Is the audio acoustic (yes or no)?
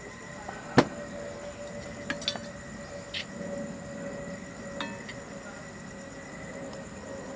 yes